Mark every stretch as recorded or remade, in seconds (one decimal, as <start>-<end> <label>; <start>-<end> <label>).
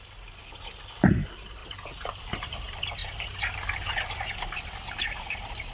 0.0-5.7 recorded